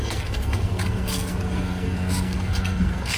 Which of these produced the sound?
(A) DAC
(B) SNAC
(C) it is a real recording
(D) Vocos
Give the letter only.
B